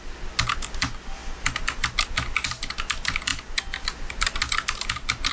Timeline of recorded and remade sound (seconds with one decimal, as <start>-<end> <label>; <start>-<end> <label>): 0.0-5.3 recorded